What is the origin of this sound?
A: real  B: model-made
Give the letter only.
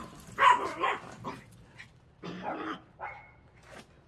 A